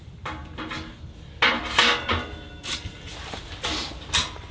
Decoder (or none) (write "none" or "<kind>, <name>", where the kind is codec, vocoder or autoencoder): none